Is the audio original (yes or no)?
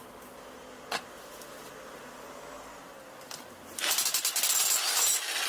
yes